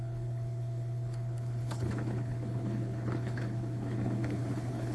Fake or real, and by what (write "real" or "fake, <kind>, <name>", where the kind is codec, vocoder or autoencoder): fake, codec, HILCodec